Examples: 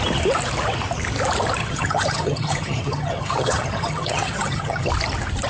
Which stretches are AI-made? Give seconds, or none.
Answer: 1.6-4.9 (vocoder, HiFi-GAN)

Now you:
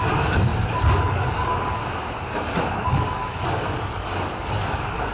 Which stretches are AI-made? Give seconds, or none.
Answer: 0.0-0.5 (codec, DAC); 1.0-1.8; 2.7-5.1